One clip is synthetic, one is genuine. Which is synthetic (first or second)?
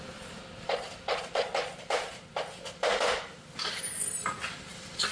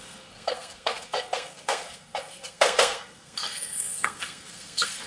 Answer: second